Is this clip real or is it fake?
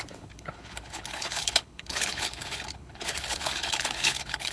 fake